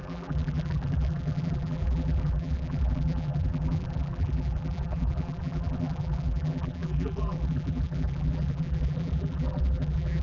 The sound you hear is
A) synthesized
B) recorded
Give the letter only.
A